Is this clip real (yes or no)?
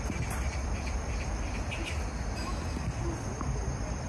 yes